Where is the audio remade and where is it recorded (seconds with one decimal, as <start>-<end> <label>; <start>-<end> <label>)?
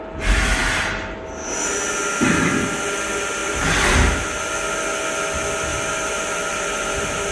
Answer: 0.0-3.4 recorded; 3.4-4.4 remade; 4.4-5.7 recorded; 5.7-7.3 remade